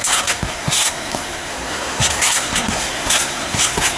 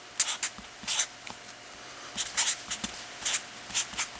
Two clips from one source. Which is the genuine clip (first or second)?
second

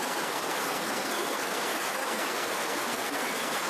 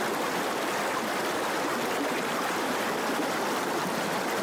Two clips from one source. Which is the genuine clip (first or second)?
second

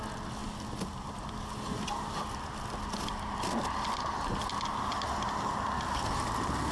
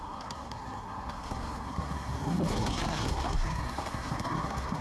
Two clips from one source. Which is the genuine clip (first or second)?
first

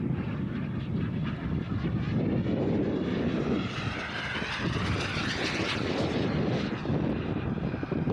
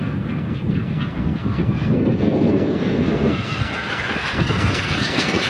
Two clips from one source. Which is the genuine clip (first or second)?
first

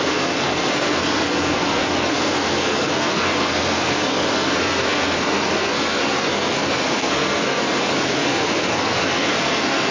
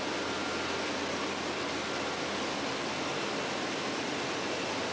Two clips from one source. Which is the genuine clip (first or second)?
second